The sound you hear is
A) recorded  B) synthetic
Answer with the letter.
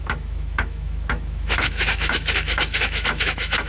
B